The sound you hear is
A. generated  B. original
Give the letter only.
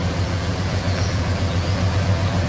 A